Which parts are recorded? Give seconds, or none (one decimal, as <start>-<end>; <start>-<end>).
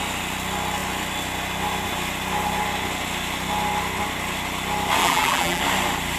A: 0.0-5.0; 5.6-6.2